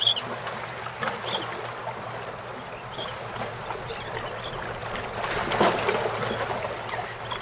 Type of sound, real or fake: real